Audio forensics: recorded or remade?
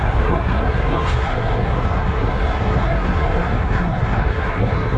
remade